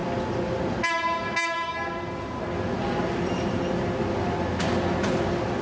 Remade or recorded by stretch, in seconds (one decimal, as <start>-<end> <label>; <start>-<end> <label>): 0.0-5.6 recorded